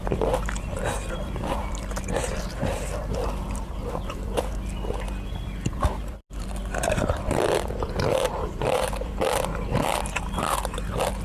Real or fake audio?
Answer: fake